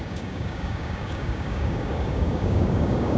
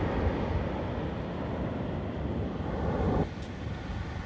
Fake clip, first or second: first